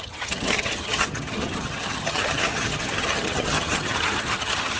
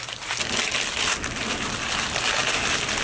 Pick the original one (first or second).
second